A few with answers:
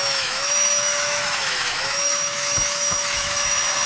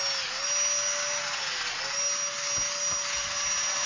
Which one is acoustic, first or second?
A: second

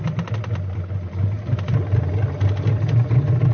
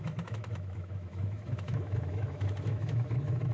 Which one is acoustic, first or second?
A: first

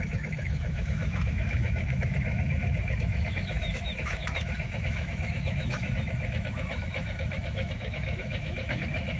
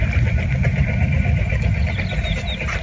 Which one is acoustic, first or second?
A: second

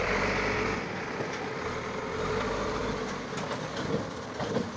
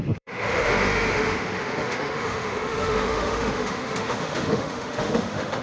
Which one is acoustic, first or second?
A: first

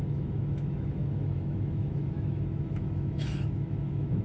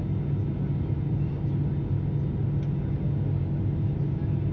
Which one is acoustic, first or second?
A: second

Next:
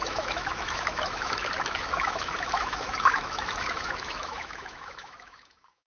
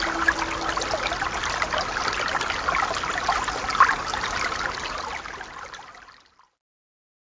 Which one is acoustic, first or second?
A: second